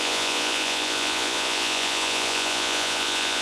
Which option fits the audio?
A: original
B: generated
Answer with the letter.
B